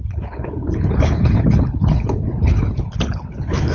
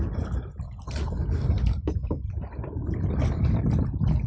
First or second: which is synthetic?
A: first